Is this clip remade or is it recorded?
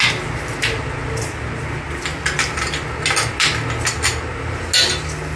recorded